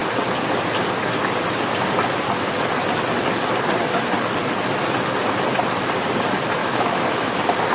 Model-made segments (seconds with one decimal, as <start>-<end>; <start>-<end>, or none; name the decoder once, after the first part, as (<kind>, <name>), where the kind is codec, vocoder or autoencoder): 6.6-7.3 (autoencoder, DAC-VAE)